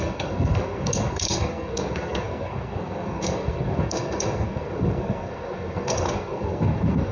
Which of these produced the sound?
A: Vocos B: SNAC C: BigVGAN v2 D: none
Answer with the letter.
B